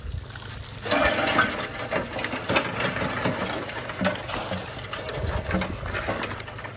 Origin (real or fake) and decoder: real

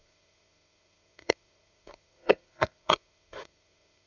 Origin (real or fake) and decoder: fake, codec, SNAC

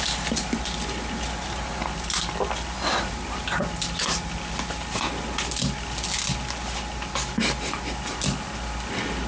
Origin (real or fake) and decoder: real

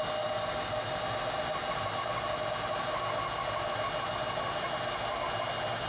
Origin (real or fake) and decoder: real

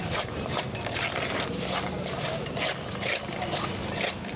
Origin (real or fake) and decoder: real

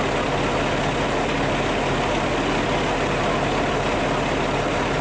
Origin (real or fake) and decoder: real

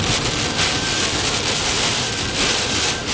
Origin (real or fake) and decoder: real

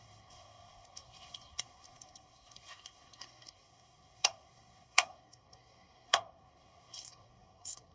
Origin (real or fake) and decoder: fake, codec, SNAC